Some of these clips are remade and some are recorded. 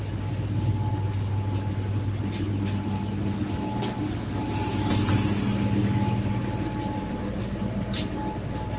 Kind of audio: recorded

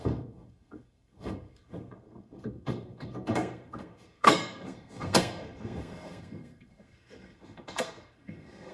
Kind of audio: remade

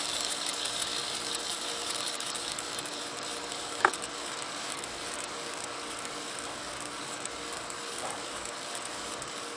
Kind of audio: remade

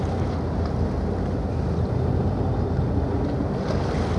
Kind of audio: recorded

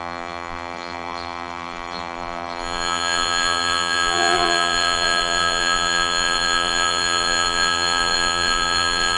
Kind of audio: remade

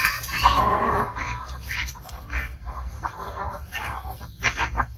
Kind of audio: remade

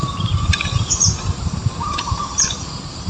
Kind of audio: recorded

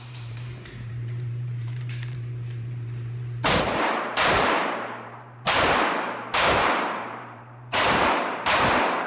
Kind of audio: remade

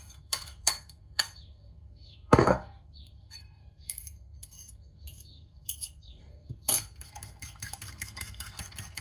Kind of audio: remade